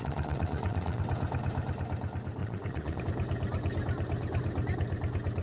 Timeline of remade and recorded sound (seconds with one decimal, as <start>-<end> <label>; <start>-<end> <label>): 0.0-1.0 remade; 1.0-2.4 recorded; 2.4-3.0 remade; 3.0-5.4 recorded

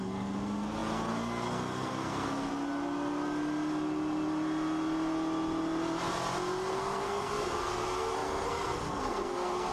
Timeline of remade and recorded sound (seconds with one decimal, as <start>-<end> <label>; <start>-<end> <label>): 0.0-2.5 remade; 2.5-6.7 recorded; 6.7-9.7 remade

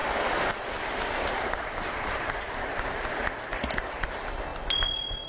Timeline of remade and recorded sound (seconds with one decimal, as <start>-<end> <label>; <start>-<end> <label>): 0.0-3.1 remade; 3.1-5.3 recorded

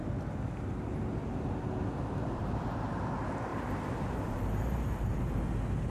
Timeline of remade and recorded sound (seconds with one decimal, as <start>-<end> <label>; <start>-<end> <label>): 0.0-2.4 recorded; 2.4-2.9 remade; 2.9-3.5 recorded; 3.5-5.4 remade; 5.4-5.9 recorded

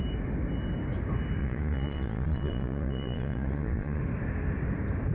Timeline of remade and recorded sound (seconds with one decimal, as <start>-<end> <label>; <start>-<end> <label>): 0.0-1.4 recorded; 1.4-4.0 remade; 4.0-5.1 recorded